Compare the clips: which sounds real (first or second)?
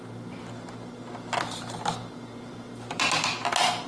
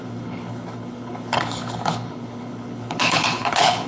first